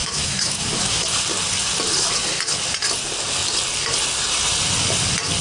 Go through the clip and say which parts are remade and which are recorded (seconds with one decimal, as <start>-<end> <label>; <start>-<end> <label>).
0.0-1.0 remade; 1.0-5.4 recorded

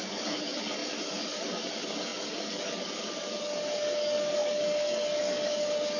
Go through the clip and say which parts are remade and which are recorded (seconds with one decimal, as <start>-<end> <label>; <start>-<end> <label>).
0.0-6.0 remade

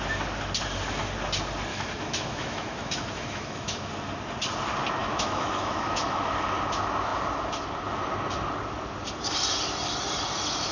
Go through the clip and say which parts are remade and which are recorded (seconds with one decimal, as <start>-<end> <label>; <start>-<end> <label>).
0.0-1.7 recorded; 1.7-3.9 remade; 3.9-5.0 recorded; 5.0-6.3 remade; 6.3-10.7 recorded

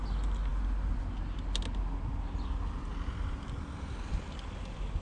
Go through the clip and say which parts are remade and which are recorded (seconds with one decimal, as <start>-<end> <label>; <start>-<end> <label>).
0.0-5.0 recorded

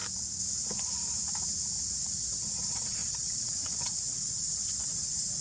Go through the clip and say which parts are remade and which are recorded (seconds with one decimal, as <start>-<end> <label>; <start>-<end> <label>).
0.0-1.9 recorded; 1.9-5.4 remade